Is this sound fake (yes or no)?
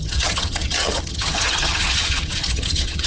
yes